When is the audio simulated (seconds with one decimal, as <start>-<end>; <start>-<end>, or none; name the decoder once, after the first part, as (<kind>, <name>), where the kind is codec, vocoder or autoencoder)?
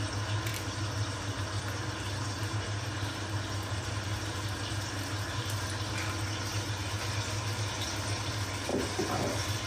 none